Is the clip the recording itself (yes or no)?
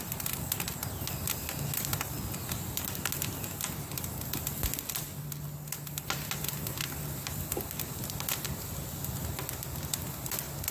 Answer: yes